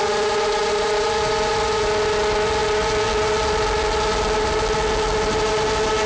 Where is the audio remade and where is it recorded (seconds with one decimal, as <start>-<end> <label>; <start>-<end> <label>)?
0.0-0.6 recorded; 0.6-1.5 remade; 1.5-6.1 recorded